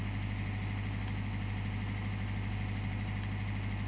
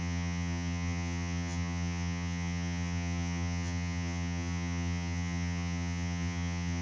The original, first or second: first